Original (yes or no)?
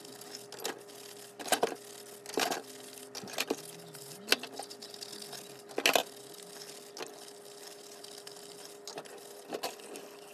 yes